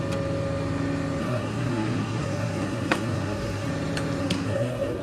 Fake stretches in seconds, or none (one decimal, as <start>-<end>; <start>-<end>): 1.2-3.7; 4.2-5.0